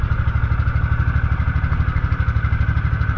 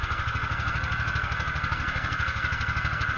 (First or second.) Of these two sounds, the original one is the first